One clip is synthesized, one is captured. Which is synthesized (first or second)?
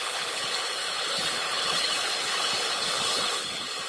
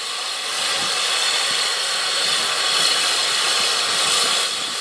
first